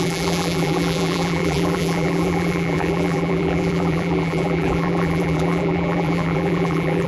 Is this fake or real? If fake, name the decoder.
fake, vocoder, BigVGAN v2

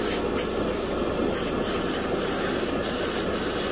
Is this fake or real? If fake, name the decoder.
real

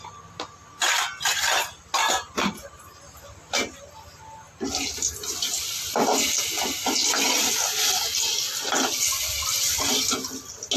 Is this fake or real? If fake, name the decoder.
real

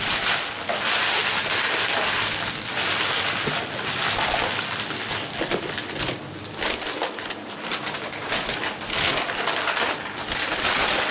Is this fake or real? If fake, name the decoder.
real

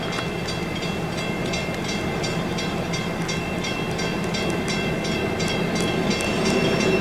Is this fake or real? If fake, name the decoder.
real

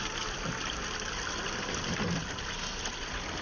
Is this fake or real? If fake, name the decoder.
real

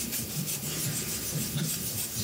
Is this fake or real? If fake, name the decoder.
fake, vocoder, BigVGAN v2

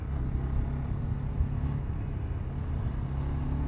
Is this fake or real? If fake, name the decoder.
real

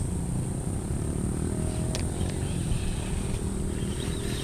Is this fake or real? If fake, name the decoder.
real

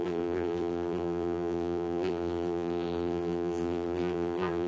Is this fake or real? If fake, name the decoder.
fake, vocoder, BigVGAN v2